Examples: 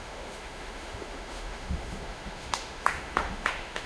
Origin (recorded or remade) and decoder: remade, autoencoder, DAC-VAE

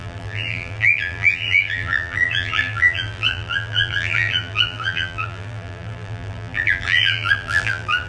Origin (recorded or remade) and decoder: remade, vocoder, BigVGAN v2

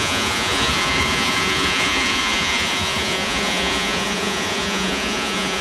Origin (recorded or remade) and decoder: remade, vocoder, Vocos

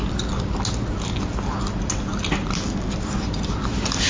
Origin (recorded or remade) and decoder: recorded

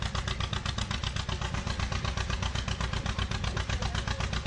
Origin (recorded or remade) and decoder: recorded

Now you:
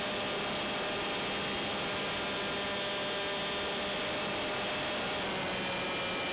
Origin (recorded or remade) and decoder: recorded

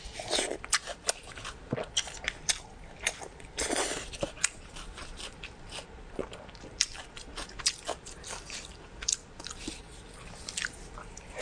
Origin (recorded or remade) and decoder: remade, vocoder, BigVGAN v2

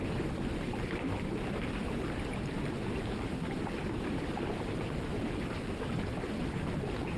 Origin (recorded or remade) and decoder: recorded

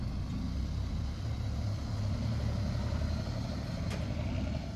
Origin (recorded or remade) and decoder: recorded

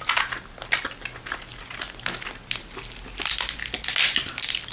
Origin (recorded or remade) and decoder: recorded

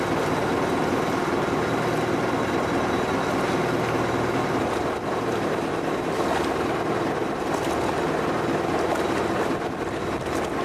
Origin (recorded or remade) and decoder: recorded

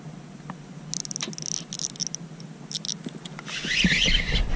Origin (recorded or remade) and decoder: recorded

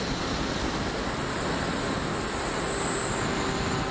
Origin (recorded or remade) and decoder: recorded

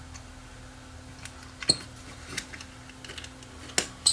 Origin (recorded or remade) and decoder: recorded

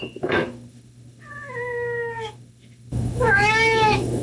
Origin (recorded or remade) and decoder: remade, autoencoder, DAC-VAE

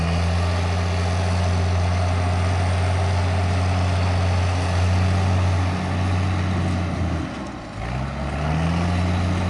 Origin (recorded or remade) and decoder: recorded